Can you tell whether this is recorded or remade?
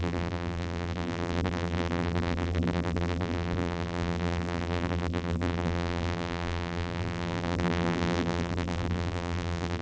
remade